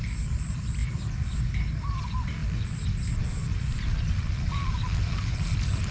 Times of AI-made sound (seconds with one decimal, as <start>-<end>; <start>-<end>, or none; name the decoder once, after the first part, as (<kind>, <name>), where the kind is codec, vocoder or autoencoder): none